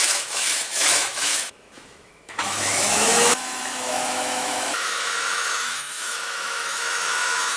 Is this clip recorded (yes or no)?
no